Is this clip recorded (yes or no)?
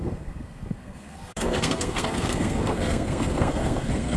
no